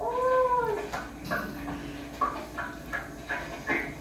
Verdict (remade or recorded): recorded